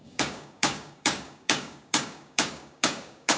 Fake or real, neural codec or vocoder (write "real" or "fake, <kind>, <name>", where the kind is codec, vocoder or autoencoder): fake, codec, DAC